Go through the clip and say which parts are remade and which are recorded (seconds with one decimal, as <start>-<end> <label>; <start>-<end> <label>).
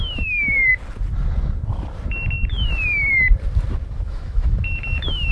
0.0-0.7 remade; 0.7-3.9 recorded; 3.9-5.3 remade